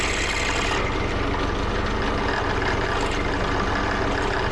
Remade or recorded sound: recorded